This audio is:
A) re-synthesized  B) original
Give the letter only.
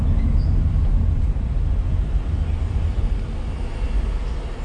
B